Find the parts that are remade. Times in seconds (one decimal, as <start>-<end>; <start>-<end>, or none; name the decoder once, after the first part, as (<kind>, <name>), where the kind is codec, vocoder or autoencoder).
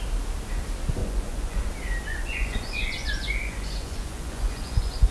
1.0-1.7 (vocoder, Vocos); 2.1-5.1